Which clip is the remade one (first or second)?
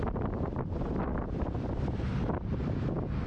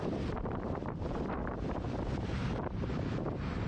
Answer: second